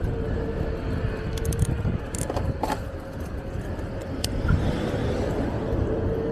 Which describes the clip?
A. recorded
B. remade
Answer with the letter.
A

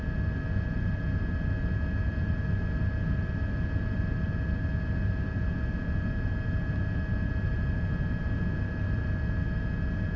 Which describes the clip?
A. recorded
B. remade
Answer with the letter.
A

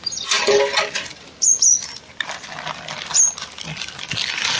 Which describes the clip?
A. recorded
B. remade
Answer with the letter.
A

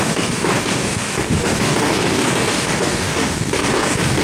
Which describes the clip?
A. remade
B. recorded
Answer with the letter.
A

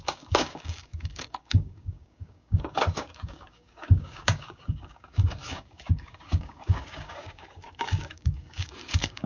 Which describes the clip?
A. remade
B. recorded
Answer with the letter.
A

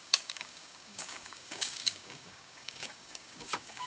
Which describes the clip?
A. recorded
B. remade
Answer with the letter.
B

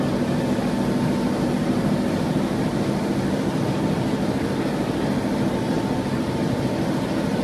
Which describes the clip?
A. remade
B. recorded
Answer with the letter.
B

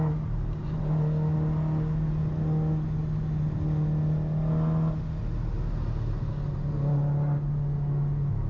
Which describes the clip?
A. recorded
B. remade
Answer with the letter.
A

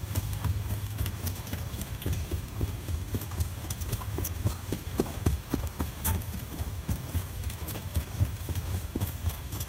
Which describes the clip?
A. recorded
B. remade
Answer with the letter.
B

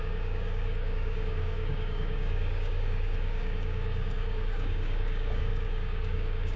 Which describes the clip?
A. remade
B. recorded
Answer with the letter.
A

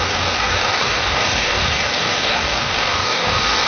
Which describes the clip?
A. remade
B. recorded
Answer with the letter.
A